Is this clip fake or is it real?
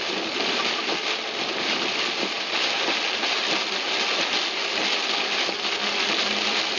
real